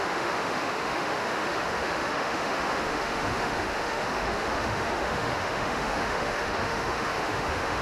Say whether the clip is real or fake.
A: fake